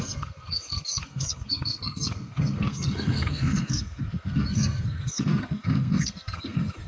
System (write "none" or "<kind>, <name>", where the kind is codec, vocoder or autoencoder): codec, SNAC